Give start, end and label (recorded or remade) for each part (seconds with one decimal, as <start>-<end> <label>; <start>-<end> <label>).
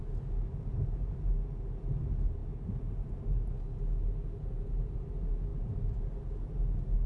0.0-7.1 recorded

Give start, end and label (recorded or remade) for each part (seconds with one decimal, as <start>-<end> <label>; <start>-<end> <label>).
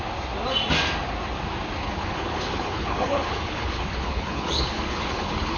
0.0-1.8 recorded; 1.8-5.6 remade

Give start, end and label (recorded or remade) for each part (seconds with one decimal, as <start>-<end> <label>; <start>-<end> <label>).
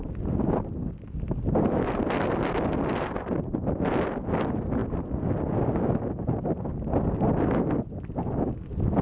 0.0-9.0 recorded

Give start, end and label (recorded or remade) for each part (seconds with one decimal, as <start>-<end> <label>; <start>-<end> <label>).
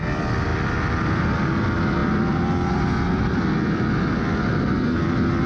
0.0-5.5 recorded